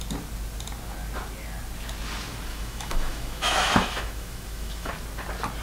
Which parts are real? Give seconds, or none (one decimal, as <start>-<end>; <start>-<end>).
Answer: 0.0-2.5; 4.9-5.6